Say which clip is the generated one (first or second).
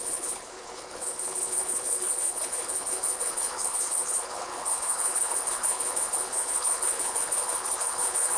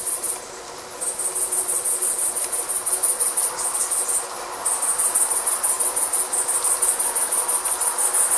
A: first